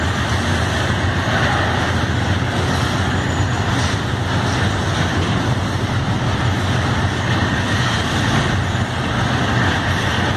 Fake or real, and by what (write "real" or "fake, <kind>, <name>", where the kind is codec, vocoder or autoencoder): real